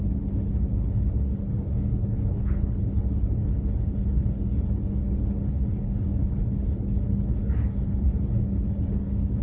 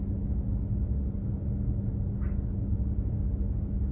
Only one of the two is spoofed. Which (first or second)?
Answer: first